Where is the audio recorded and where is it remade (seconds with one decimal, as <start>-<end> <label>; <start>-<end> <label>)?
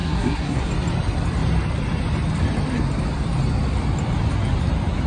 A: 0.0-0.7 remade; 0.7-5.1 recorded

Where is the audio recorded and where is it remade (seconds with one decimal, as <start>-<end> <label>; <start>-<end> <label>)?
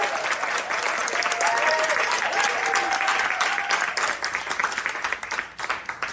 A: 0.0-6.1 recorded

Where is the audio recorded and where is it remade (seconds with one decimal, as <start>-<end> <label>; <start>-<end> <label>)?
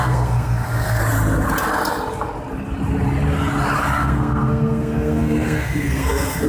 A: 0.0-1.0 remade; 1.0-4.0 recorded; 4.0-6.5 remade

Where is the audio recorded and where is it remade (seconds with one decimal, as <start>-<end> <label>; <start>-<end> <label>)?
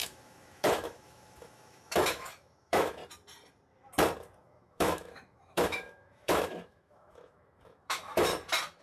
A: 0.0-3.0 remade; 3.0-4.4 recorded; 4.4-8.3 remade; 8.3-8.8 recorded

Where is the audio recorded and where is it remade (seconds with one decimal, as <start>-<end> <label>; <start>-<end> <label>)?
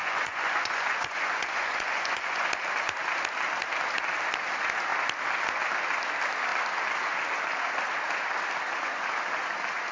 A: 0.0-2.5 remade; 2.5-9.9 recorded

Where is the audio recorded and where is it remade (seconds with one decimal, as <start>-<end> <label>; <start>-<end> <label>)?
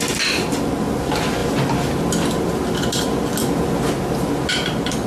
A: 0.0-5.1 recorded